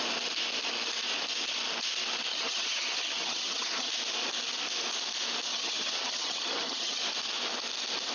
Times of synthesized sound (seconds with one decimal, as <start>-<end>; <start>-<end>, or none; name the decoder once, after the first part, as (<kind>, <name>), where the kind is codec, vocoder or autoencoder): 2.3-3.9 (vocoder, HiFi-GAN); 5.5-7.0